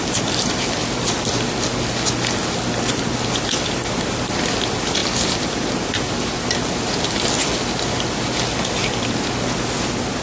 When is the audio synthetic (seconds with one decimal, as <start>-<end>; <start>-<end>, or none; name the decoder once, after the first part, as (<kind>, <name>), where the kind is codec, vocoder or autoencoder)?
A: none